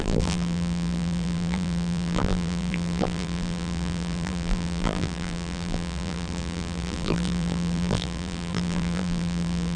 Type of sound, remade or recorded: remade